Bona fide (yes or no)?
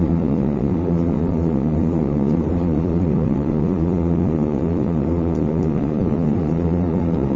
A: no